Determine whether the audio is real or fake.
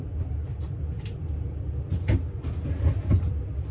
real